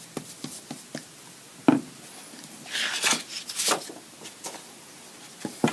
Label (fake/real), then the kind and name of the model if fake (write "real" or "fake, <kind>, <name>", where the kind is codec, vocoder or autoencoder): real